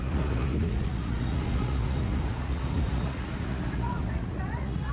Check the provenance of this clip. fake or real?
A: fake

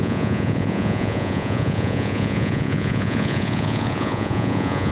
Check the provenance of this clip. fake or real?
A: fake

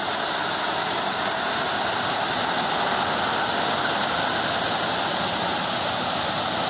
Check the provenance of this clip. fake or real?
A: real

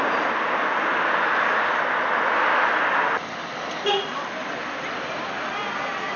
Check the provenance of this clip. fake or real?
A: real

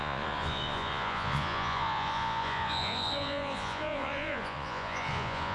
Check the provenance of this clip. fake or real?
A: fake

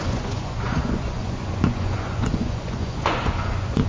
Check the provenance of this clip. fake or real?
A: fake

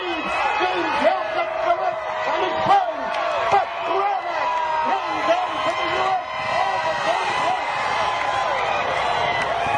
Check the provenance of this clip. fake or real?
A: real